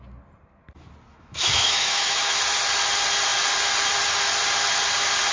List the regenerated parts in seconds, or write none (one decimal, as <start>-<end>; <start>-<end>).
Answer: 1.1-2.4